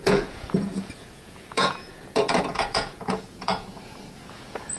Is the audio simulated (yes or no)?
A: yes